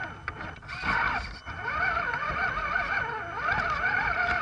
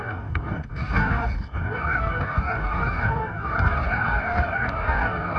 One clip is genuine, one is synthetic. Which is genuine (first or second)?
first